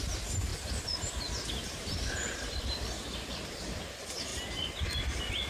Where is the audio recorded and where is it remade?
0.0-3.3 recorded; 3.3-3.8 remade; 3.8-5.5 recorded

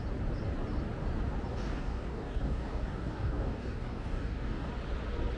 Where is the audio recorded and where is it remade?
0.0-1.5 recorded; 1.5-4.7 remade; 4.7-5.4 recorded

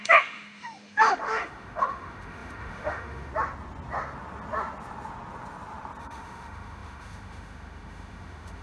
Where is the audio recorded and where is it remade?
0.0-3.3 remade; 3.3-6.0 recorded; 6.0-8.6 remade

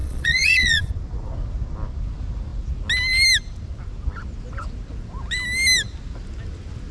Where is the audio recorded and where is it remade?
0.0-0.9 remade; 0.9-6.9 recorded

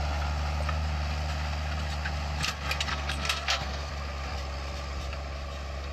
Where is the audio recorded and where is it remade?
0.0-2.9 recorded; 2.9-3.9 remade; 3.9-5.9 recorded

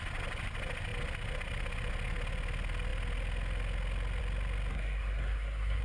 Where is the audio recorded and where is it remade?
0.0-4.7 recorded; 4.7-5.8 remade